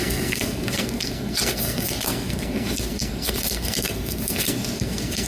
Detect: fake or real fake